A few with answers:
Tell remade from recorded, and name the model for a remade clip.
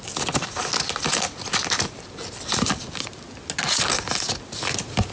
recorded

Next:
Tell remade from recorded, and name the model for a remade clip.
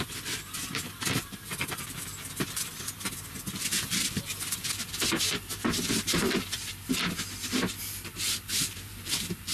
remade, vocoder, BigVGAN v2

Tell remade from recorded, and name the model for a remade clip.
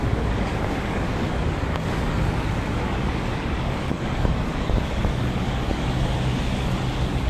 remade, codec, DAC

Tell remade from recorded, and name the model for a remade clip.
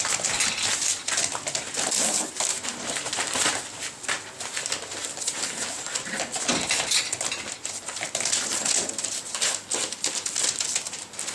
recorded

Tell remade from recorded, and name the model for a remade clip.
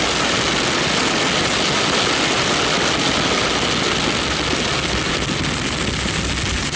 recorded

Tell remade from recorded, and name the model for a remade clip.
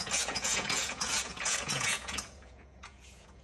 remade, vocoder, Vocos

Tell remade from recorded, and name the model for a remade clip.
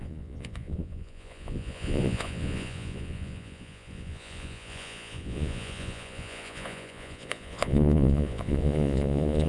remade, vocoder, Vocos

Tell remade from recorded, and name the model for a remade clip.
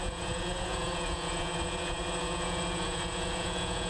remade, vocoder, Vocos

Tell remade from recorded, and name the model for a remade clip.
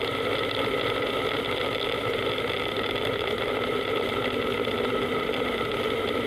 recorded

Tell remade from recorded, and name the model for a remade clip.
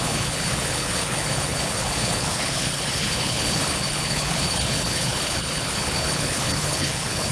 remade, codec, HILCodec